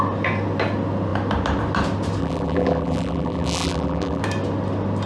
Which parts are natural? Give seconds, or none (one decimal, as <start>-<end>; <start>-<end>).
0.0-2.2; 4.2-5.1